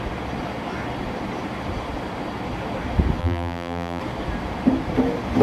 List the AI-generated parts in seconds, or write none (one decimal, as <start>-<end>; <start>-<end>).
3.2-4.0